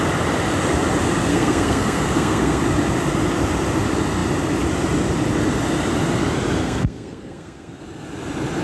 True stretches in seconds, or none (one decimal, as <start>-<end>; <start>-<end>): 0.0-1.3; 2.6-6.6; 7.8-8.6